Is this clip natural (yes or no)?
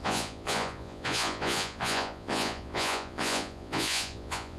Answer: no